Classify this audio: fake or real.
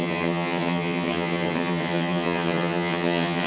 fake